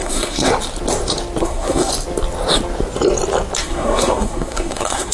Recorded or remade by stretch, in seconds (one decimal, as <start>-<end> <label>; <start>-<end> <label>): 0.0-0.5 remade; 0.5-1.4 recorded; 1.4-1.9 remade; 1.9-3.6 recorded; 3.6-5.1 remade